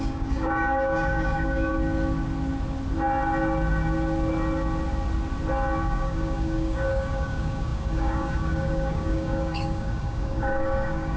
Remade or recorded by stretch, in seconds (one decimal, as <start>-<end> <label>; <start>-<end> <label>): 0.0-1.7 remade; 1.7-5.8 recorded; 5.8-11.2 remade

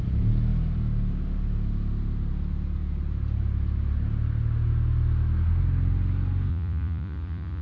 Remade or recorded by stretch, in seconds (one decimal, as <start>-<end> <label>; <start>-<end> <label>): 0.0-6.5 recorded; 6.5-7.6 remade

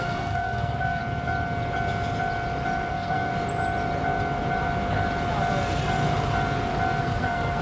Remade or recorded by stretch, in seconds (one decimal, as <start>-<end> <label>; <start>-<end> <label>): 0.0-1.0 remade; 1.0-2.9 recorded; 2.9-3.3 remade; 3.3-7.0 recorded; 7.0-7.6 remade

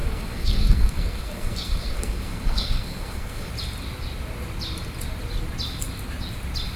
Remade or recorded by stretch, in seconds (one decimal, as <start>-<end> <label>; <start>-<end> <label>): 0.0-3.5 remade; 3.5-6.8 recorded